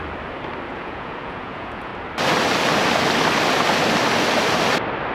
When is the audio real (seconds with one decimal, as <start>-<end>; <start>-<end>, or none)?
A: 0.0-0.7; 1.9-5.1